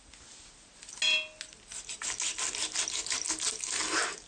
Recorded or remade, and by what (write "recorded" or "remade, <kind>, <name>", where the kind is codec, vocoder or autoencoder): recorded